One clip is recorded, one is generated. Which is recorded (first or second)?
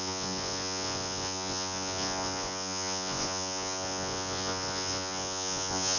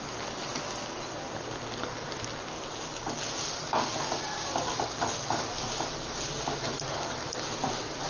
second